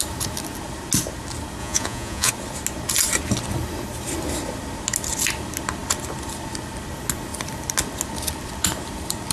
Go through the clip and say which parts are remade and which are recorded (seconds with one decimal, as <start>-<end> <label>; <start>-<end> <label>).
0.0-1.6 recorded; 1.6-2.3 remade; 2.3-9.3 recorded